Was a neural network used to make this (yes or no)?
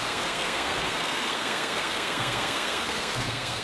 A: yes